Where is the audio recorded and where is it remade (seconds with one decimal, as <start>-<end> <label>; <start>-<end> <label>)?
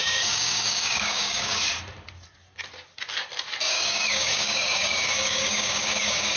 0.0-1.6 remade; 1.6-3.6 recorded; 3.6-6.4 remade